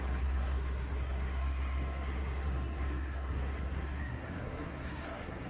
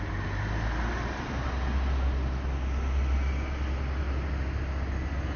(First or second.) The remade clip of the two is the first